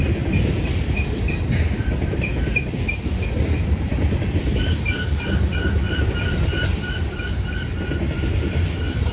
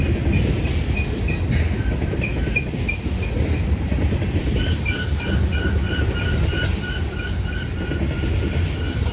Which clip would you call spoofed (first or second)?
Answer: first